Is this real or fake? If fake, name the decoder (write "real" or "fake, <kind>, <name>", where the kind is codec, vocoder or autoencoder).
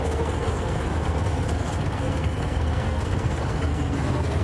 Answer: fake, codec, SNAC